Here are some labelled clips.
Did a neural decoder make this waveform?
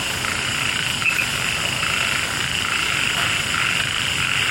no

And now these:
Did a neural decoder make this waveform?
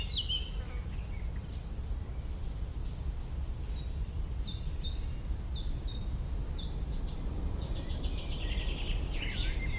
no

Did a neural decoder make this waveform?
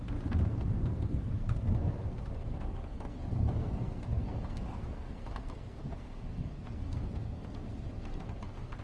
yes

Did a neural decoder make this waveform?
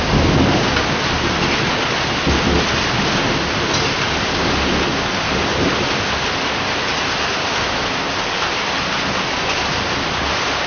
no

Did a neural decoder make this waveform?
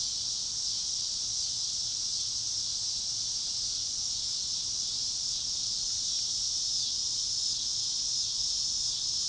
no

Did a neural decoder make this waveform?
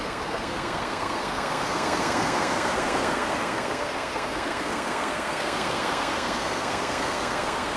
yes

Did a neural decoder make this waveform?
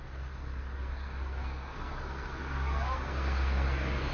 yes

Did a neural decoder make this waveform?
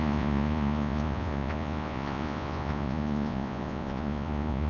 yes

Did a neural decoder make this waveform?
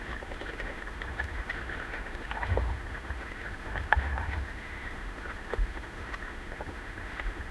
yes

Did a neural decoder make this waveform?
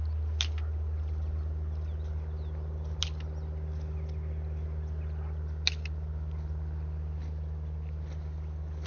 no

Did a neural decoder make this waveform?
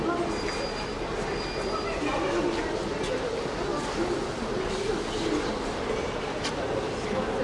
no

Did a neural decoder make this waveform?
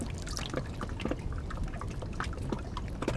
no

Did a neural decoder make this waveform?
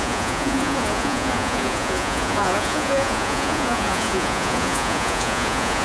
yes